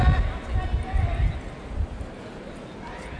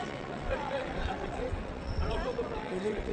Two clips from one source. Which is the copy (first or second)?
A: second